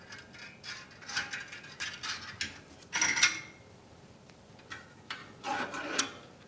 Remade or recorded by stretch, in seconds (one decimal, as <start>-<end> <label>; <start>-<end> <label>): 0.0-5.2 recorded; 5.2-6.0 remade; 6.0-6.5 recorded